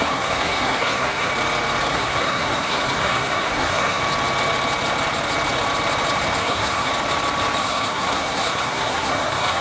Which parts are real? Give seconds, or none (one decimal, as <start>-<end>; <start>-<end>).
1.3-1.9; 4.0-6.4; 6.9-7.6